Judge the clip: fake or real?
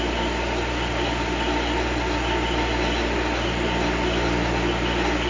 real